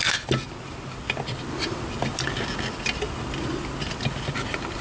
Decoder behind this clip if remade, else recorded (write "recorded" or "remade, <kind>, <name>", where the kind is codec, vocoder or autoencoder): recorded